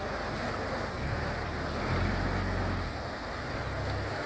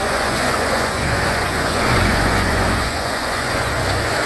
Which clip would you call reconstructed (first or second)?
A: second